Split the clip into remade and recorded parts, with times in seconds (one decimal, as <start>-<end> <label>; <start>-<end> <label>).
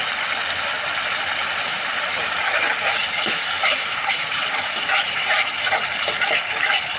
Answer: 0.0-1.7 recorded; 1.7-2.5 remade; 2.5-3.0 recorded; 3.0-5.5 remade; 5.5-7.0 recorded